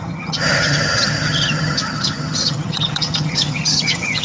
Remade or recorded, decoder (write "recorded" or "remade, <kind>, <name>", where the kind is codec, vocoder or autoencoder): remade, vocoder, HiFi-GAN